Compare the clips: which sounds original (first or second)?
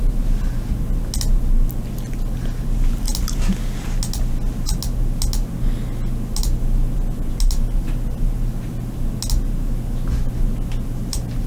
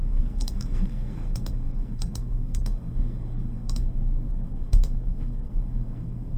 first